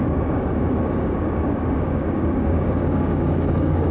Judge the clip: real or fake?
fake